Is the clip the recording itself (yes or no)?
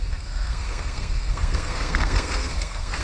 no